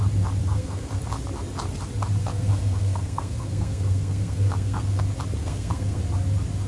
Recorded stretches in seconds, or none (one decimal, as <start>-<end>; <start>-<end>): 0.0-0.4; 1.0-2.2; 5.0-5.4; 6.0-6.7